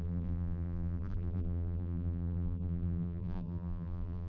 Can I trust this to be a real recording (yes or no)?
no